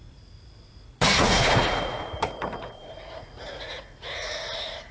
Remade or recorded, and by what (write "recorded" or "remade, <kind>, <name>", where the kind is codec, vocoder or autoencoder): remade, vocoder, Vocos